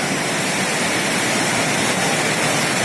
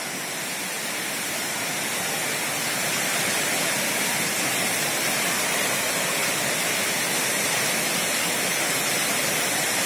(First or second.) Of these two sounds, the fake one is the first